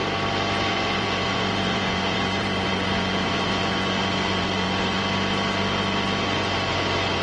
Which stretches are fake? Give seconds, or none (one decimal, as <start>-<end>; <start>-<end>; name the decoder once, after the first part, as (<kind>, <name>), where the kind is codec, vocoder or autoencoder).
0.7-5.0 (vocoder, Vocos); 6.2-7.2